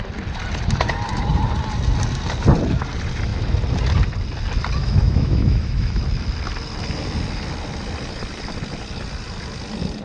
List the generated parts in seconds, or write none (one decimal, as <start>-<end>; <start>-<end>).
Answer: 4.8-6.0